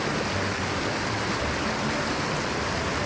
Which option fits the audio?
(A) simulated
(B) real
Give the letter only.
B